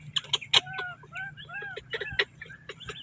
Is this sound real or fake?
real